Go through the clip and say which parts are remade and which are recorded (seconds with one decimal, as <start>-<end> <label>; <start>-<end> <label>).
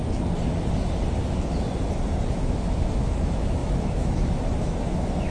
0.0-2.3 recorded; 2.3-5.3 remade